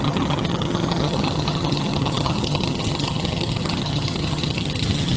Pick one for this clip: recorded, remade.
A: remade